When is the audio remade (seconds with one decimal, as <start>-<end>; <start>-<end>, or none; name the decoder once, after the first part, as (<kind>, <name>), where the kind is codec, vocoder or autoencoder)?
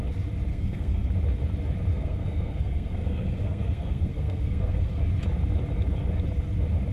0.5-1.1 (codec, SNAC); 1.9-5.0